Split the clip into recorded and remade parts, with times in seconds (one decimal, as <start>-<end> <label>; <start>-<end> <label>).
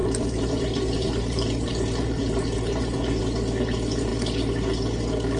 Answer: 0.0-3.2 remade; 3.2-5.4 recorded